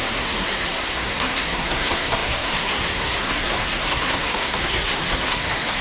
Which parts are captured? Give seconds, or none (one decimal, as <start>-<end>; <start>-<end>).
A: none